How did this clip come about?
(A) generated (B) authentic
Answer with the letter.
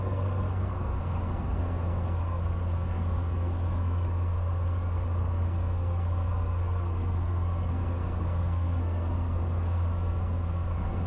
A